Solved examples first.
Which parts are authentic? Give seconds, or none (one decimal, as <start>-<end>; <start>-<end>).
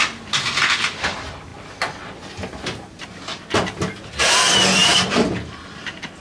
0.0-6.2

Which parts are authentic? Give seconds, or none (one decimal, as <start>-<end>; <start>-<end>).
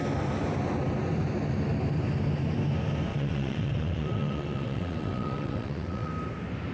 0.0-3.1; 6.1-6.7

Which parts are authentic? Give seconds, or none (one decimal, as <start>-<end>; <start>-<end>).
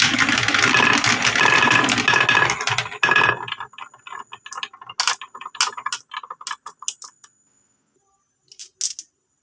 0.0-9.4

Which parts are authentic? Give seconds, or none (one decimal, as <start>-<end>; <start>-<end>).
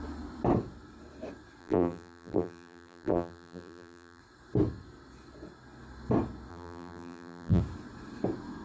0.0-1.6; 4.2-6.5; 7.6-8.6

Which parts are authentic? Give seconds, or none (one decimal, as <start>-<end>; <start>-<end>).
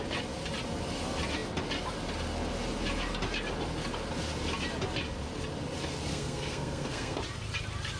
0.0-6.1; 7.2-8.0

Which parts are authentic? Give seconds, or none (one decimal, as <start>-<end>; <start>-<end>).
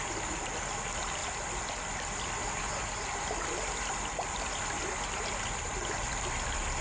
0.0-6.8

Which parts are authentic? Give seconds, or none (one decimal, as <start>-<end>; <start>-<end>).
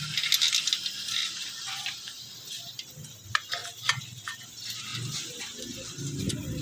0.0-1.2; 2.4-6.6